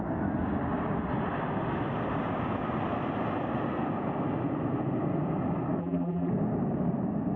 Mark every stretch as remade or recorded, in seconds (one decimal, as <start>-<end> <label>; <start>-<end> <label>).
0.0-5.8 recorded; 5.8-6.3 remade; 6.3-7.4 recorded